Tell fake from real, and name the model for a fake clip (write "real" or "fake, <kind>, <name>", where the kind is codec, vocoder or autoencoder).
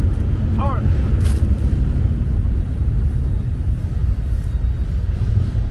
real